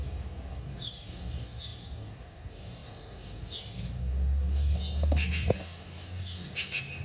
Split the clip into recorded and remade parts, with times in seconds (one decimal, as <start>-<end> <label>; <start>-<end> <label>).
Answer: 0.0-7.0 remade